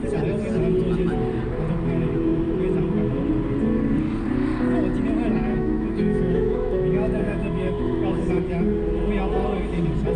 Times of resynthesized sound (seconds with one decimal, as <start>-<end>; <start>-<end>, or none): 5.5-8.3